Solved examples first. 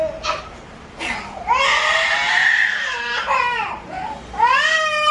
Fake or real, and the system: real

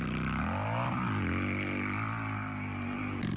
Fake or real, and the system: real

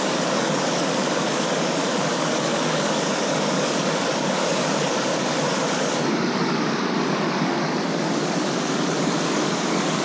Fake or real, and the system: fake, codec, DAC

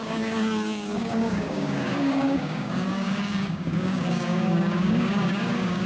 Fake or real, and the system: fake, codec, DAC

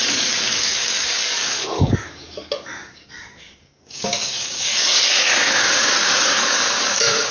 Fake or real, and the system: fake, codec, DAC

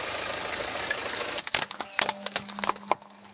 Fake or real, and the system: fake, codec, DAC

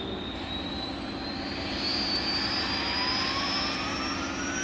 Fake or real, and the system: real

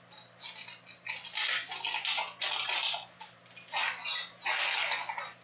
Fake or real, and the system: real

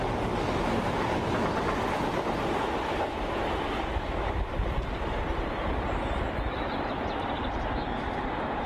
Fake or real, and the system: real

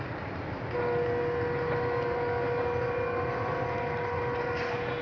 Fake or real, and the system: real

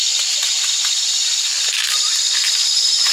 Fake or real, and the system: real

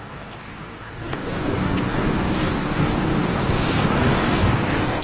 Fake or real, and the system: fake, codec, DAC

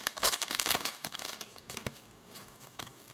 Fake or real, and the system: fake, codec, DAC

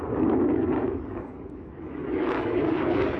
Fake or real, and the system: fake, codec, DAC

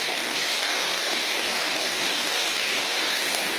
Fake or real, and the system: fake, codec, DAC